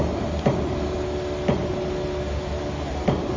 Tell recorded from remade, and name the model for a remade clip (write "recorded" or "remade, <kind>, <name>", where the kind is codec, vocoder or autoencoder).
recorded